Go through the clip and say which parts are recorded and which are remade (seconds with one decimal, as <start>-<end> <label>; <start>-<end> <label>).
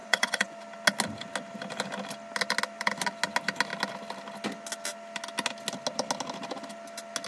0.0-0.6 remade; 0.6-7.3 recorded